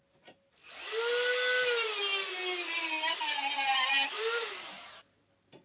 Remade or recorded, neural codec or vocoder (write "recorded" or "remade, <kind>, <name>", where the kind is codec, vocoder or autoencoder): recorded